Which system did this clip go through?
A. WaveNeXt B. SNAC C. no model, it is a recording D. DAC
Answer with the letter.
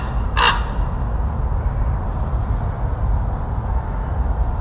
C